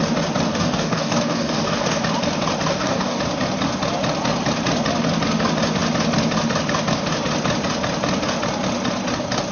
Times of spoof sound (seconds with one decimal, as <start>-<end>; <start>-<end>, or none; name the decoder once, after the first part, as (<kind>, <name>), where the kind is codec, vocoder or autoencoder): 0.5-2.0 (codec, DAC); 2.7-3.2